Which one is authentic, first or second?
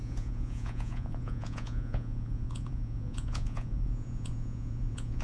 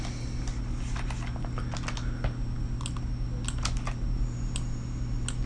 second